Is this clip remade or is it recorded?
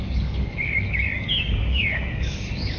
remade